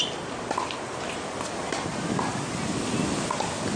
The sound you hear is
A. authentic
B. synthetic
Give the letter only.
A